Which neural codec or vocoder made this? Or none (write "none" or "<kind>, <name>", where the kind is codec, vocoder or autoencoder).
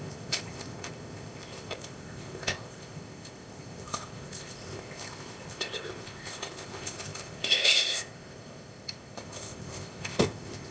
codec, ZipCodec